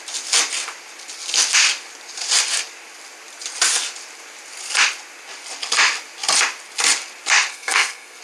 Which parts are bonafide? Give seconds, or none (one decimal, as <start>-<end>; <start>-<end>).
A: 0.0-7.5